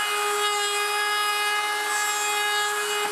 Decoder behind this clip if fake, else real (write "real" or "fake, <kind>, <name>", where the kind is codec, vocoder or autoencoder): real